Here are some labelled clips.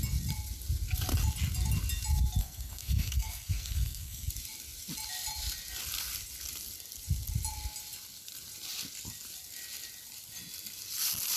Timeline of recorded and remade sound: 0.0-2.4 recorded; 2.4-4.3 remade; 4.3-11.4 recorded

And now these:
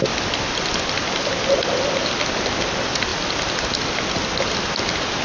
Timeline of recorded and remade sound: 0.0-5.2 recorded

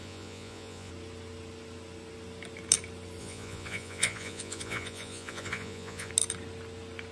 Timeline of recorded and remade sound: 0.0-0.9 remade; 0.9-3.2 recorded; 3.2-6.1 remade; 6.1-7.1 recorded

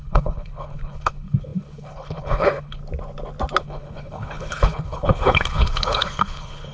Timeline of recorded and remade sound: 0.0-2.8 remade; 2.8-3.6 recorded; 3.6-6.7 remade

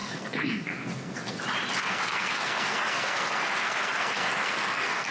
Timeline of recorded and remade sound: 0.0-1.4 remade; 1.4-1.8 recorded; 1.8-5.1 remade